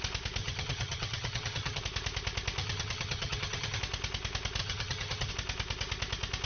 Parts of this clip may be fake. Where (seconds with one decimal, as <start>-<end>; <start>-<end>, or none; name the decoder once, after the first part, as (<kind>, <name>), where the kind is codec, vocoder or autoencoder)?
0.4-1.8 (vocoder, HiFi-GAN); 2.6-3.8; 4.6-5.3

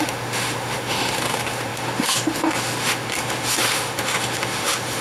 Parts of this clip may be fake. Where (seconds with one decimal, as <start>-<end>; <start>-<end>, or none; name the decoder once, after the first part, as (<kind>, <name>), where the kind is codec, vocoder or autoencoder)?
0.0-5.0 (autoencoder, DAC-VAE)

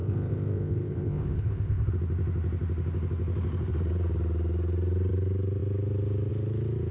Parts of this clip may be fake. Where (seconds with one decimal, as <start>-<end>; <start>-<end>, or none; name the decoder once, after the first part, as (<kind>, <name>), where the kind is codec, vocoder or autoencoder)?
0.0-1.9 (codec, ZipCodec)

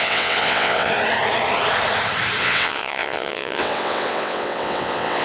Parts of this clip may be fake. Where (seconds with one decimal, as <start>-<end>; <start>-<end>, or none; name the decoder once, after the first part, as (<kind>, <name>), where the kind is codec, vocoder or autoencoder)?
0.0-0.9 (vocoder, WaveNeXt); 2.4-5.2